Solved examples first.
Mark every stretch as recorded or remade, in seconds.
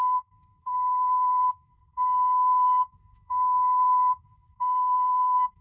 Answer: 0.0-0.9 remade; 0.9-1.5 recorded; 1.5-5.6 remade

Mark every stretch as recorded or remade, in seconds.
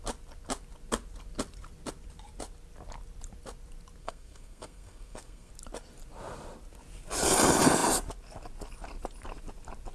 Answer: 0.0-4.0 recorded; 4.0-5.5 remade; 5.5-9.9 recorded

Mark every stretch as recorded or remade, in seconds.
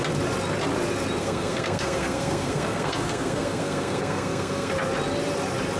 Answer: 0.0-1.2 recorded; 1.2-4.7 remade; 4.7-5.8 recorded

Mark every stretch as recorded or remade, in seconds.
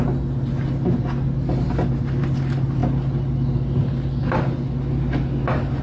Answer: 0.0-5.8 recorded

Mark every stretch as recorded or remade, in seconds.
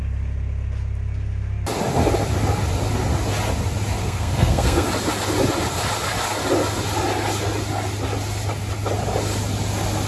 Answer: 0.0-4.0 recorded; 4.0-4.9 remade; 4.9-10.1 recorded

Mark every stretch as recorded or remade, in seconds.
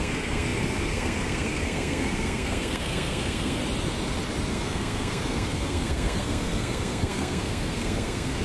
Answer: 0.0-3.6 remade; 3.6-4.5 recorded; 4.5-8.4 remade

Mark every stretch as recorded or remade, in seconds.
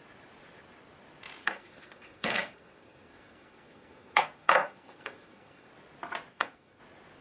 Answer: 0.0-1.4 recorded; 1.4-5.7 remade; 5.7-6.3 recorded; 6.3-6.8 remade; 6.8-7.2 recorded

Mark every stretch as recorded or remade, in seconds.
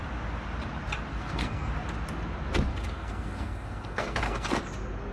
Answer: 0.0-1.1 recorded; 1.1-1.7 remade; 1.7-2.7 recorded; 2.7-4.6 remade; 4.6-5.1 recorded